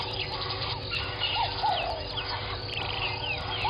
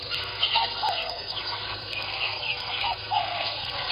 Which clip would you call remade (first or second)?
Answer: second